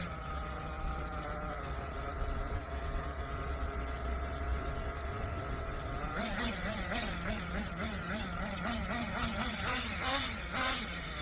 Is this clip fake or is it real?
fake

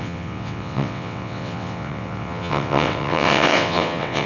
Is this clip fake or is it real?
fake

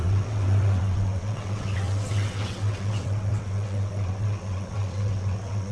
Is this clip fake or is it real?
fake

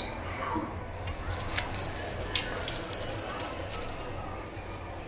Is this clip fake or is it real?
real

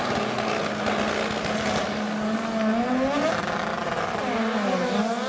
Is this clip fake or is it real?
real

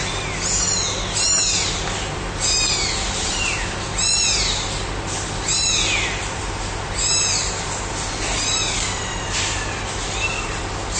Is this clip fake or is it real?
real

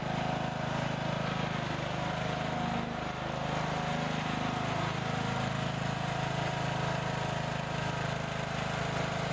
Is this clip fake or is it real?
real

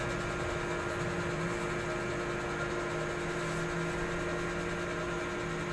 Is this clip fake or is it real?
real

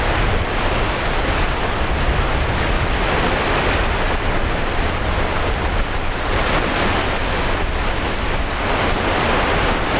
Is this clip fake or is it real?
real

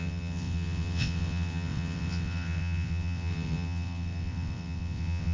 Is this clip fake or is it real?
fake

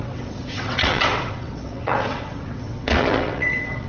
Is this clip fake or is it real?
fake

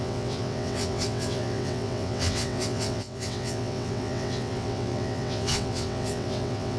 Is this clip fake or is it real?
fake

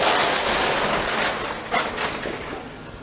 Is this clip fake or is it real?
real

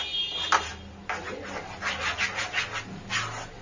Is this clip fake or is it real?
real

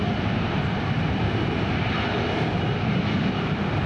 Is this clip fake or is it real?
real